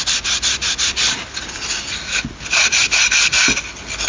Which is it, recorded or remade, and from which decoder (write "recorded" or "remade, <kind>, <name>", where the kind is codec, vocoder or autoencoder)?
recorded